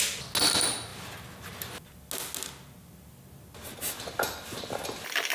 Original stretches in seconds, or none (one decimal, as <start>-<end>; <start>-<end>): 0.0-5.3